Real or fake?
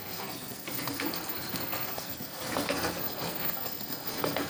fake